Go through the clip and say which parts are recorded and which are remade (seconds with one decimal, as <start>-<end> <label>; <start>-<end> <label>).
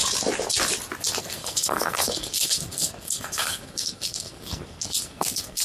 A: 0.0-1.2 recorded; 1.2-5.6 remade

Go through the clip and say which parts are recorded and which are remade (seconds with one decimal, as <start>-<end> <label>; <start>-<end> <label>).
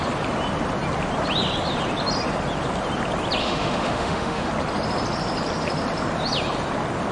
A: 0.0-3.4 recorded; 3.4-4.5 remade; 4.5-7.1 recorded